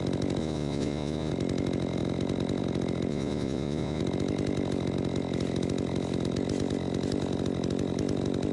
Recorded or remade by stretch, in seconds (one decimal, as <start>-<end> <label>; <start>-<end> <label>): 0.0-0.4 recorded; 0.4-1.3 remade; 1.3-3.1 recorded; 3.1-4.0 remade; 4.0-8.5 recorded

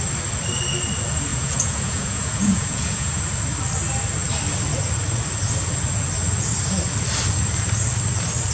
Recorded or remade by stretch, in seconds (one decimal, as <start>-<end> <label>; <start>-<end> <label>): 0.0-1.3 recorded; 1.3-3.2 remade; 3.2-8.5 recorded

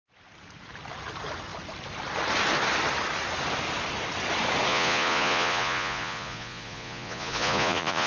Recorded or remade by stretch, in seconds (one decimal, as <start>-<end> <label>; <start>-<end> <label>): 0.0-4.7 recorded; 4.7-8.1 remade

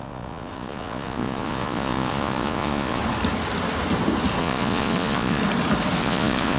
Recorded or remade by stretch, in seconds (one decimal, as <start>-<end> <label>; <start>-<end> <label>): 0.0-3.0 remade; 3.0-4.4 recorded; 4.4-5.4 remade; 5.4-6.0 recorded; 6.0-6.6 remade

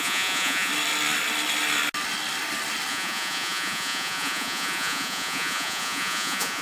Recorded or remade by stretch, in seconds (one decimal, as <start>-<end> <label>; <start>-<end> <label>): 0.0-0.7 remade; 0.7-2.9 recorded; 2.9-6.6 remade